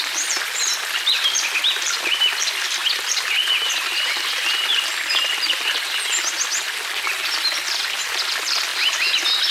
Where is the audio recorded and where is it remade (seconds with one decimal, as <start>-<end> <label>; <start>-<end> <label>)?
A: 0.0-2.8 remade; 2.8-3.8 recorded; 3.8-4.7 remade; 4.7-8.1 recorded; 8.1-8.7 remade; 8.7-9.5 recorded